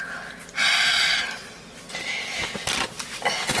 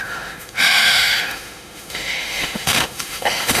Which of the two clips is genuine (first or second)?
first